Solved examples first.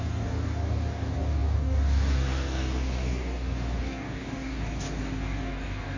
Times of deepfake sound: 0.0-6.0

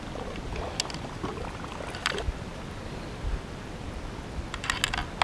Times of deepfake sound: none

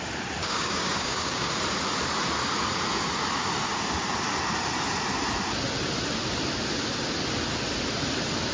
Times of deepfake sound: 0.4-1.5

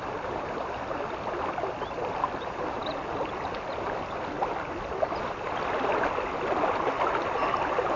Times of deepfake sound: none

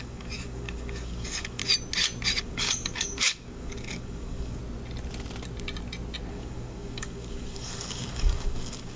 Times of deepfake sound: 0.0-1.6; 2.4-4.6; 6.3-9.0

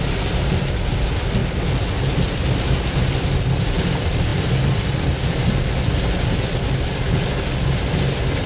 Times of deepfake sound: none